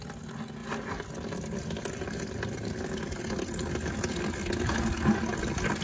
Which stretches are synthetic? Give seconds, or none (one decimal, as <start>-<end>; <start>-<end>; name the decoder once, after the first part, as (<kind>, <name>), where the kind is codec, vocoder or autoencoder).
none